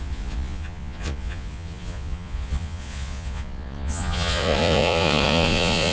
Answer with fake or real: fake